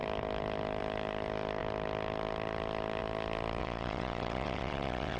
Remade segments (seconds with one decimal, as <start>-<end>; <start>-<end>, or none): 3.6-5.2